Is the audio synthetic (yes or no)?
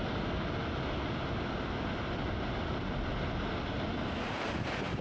no